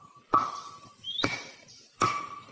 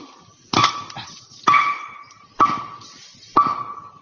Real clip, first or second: second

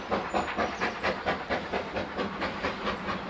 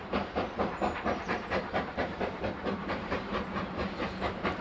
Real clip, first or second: first